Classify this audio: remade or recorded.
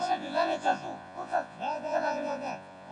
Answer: remade